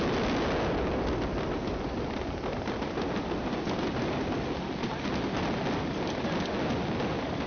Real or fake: real